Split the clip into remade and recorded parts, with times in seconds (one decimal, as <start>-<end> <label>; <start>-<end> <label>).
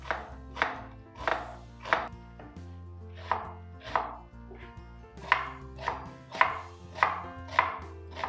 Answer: 0.0-8.3 recorded